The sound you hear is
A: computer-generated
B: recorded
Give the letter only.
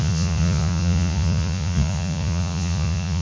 A